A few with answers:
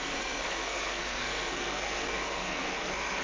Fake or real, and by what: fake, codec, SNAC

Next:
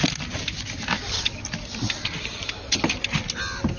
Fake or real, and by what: real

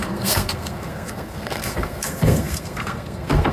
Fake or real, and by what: fake, codec, SNAC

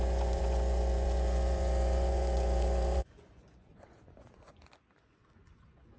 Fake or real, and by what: fake, vocoder, Vocos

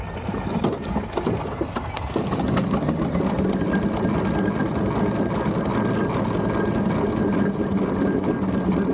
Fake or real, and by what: real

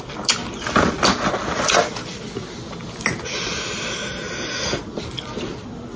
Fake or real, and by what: real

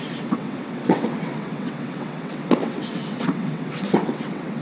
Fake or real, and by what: fake, vocoder, WaveNeXt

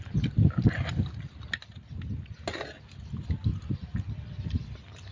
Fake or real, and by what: real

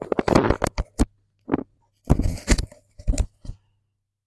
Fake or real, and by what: real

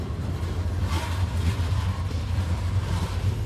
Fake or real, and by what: real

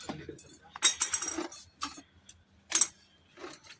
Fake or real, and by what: real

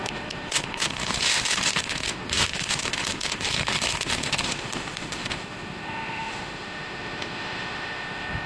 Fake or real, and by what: fake, autoencoder, DAC-VAE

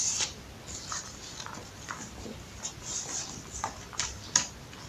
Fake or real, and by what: real